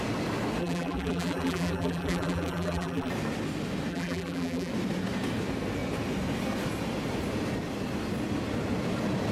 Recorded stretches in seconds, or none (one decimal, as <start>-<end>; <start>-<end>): 0.0-0.6; 3.1-3.9; 4.7-9.3

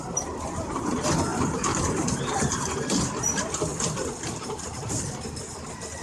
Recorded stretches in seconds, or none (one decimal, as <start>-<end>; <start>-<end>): 0.0-3.7; 5.4-6.0

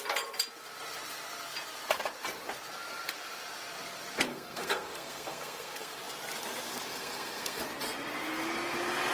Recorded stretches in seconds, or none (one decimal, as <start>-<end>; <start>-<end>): 0.0-4.3; 6.0-6.9; 7.6-9.1